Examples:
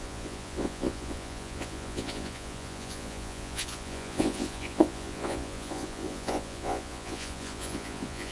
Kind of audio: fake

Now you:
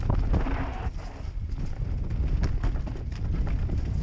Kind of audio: real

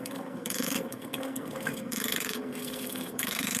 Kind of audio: fake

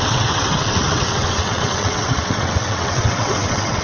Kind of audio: fake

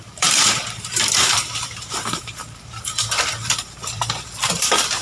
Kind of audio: fake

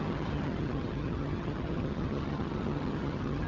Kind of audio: fake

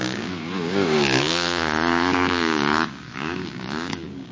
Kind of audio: fake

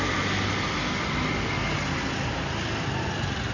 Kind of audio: real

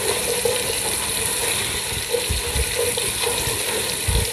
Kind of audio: real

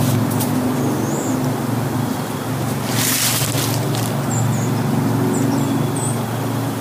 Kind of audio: real